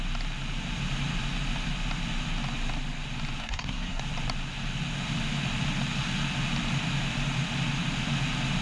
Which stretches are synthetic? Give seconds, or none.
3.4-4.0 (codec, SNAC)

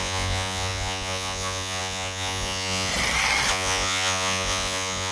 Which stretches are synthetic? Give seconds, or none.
0.0-2.9 (vocoder, Vocos); 3.5-5.1

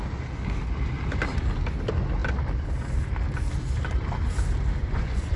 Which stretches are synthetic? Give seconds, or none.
4.8-5.4 (vocoder, Vocos)